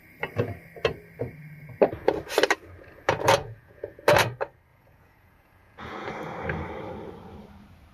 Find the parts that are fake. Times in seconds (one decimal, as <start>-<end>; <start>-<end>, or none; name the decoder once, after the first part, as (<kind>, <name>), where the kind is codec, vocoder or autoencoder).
3.4-4.0 (vocoder, Vocos); 4.7-6.1